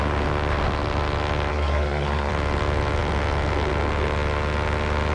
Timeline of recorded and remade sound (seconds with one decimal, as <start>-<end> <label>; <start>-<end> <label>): 0.0-1.5 recorded; 1.5-2.3 remade; 2.3-5.1 recorded